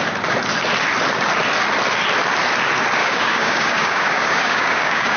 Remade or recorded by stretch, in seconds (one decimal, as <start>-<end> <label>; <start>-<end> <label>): 0.0-3.0 recorded; 3.0-5.2 remade